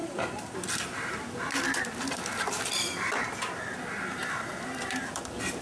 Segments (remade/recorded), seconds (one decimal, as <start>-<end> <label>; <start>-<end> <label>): 0.0-3.4 remade; 3.4-4.2 recorded; 4.2-5.6 remade